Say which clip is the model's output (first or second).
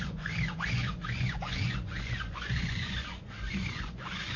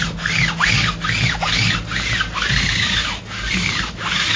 first